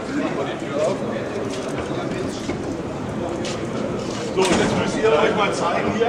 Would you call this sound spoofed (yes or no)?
yes